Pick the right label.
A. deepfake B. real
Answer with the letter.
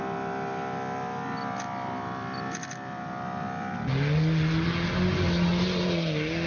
B